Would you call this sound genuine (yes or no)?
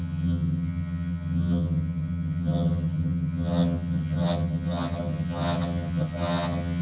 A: no